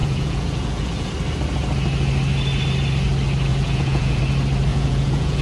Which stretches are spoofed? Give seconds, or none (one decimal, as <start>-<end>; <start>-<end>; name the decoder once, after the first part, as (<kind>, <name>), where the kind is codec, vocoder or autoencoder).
0.0-1.1 (vocoder, Vocos); 3.5-4.2; 4.7-5.4